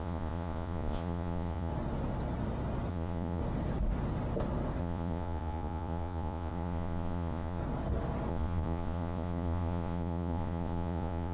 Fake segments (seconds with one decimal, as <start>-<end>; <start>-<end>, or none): 0.0-1.7; 2.9-3.4; 4.8-7.6; 8.3-11.3